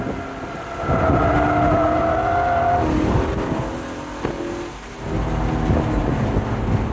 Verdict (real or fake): real